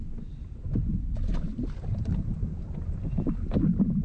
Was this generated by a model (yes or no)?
no